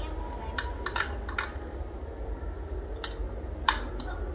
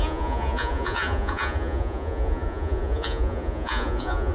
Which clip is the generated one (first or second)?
second